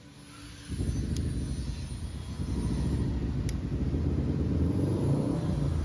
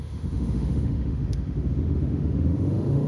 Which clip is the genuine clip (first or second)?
first